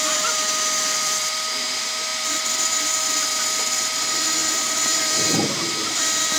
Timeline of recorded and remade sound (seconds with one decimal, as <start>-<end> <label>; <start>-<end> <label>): 0.0-6.4 remade